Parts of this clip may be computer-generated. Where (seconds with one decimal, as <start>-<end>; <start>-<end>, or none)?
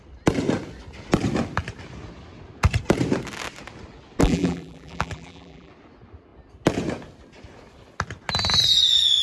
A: 4.2-5.7